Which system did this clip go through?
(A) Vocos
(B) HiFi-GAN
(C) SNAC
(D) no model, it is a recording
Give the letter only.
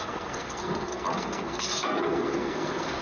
C